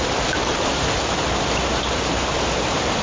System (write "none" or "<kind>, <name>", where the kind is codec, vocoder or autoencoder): none